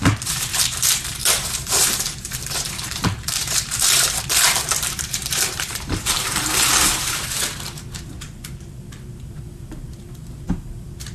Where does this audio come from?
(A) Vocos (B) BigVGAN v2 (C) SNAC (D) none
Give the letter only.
B